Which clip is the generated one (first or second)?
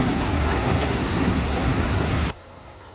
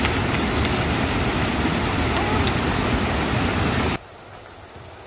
first